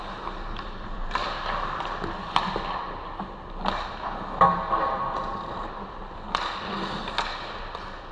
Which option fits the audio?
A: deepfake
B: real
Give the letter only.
B